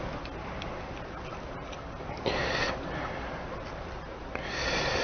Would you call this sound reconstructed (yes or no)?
no